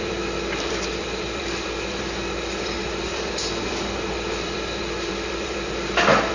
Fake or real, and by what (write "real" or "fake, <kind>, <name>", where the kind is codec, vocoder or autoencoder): fake, vocoder, BigVGAN v2